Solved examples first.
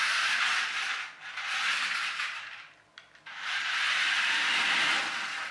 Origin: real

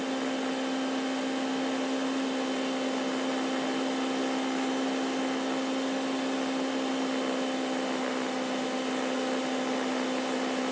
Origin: real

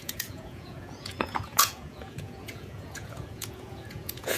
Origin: fake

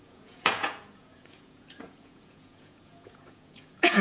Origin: fake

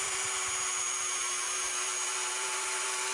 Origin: fake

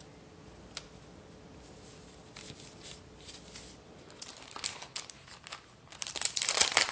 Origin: real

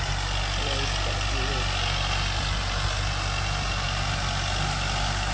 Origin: real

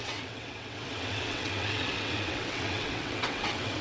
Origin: fake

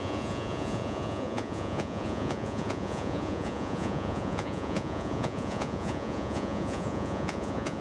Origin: fake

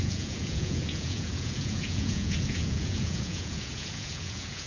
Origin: fake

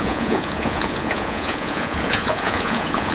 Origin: fake